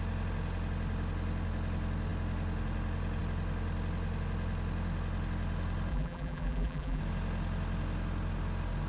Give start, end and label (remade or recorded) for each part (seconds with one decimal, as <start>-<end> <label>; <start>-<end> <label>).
0.0-5.9 recorded; 5.9-7.0 remade; 7.0-8.9 recorded